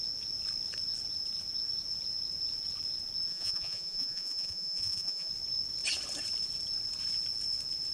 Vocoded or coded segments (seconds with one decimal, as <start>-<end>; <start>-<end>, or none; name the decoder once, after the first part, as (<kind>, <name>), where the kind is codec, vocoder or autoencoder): 3.3-5.3 (vocoder, Vocos)